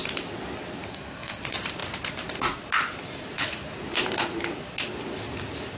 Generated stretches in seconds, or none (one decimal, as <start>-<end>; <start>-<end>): 0.9-1.4